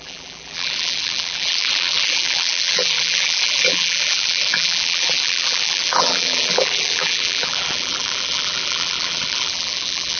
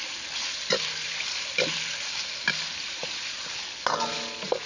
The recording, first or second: second